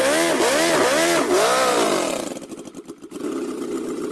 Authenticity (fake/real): real